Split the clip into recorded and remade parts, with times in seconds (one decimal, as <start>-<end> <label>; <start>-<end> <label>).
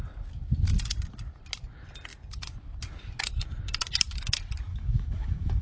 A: 0.0-4.7 recorded; 4.7-5.6 remade